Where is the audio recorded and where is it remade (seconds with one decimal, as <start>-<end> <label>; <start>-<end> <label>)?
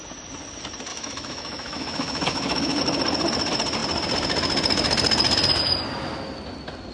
0.0-0.9 recorded; 0.9-2.8 remade; 2.8-6.9 recorded